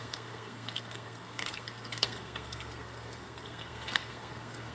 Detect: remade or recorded remade